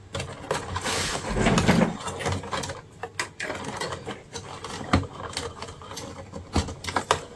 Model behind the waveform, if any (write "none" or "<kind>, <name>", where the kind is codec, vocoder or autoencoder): none